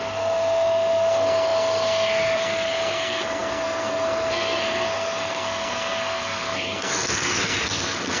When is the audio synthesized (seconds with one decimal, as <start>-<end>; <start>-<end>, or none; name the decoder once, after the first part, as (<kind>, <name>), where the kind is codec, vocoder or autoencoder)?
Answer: 0.0-8.2 (codec, SNAC)